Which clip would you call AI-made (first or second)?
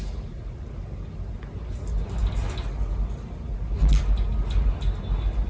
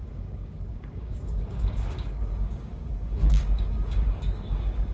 second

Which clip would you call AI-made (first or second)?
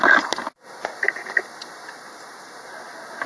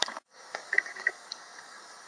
second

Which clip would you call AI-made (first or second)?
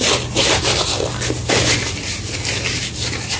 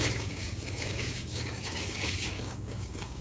second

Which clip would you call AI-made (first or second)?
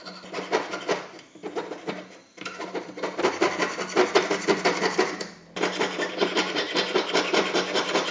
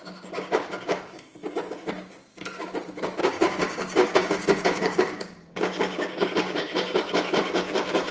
second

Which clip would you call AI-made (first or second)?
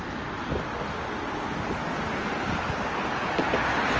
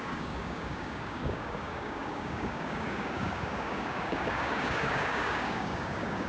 second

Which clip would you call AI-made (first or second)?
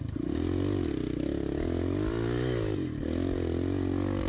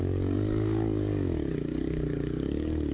second